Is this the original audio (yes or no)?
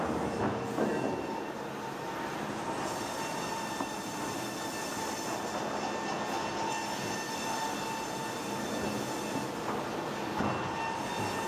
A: yes